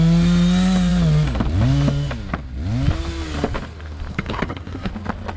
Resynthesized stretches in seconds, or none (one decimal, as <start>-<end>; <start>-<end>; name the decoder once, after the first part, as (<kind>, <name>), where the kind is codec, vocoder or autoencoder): 4.1-4.9 (codec, SNAC)